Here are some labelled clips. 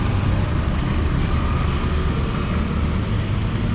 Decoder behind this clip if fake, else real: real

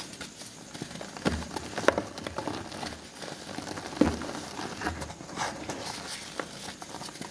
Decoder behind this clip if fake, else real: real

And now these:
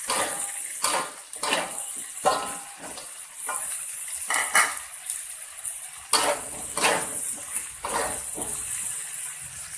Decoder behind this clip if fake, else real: real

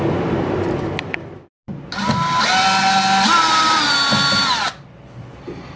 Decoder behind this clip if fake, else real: real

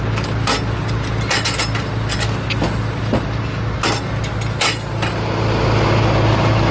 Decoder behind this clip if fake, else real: real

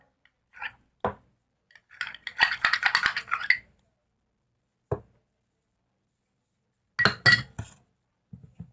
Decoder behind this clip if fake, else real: real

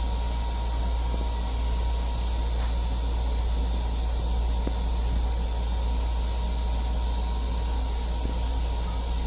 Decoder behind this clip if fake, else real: real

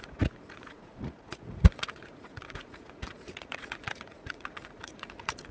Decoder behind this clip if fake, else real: fake, vocoder, Vocos